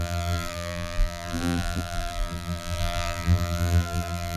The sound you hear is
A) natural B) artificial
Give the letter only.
B